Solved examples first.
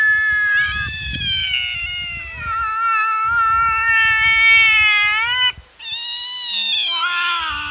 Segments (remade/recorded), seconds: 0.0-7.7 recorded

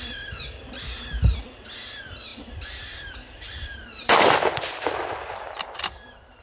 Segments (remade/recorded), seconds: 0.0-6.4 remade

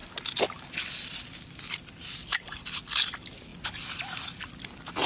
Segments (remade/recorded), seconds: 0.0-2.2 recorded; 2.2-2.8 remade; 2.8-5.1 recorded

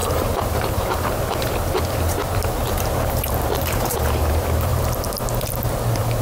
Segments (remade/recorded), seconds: 0.0-2.2 remade; 2.2-2.7 recorded; 2.7-4.7 remade; 4.7-6.2 recorded

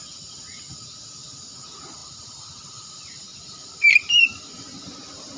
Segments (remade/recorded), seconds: 0.0-2.0 recorded; 2.0-5.4 remade

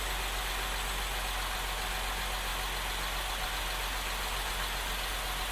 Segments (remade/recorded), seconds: 0.0-5.5 recorded

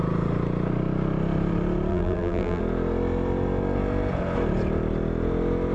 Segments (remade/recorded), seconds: 0.0-1.9 recorded; 1.9-2.6 remade; 2.6-5.7 recorded